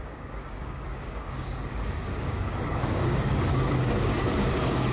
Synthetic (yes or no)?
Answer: yes